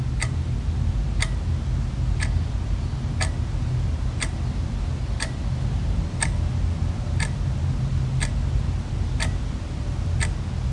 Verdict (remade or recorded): recorded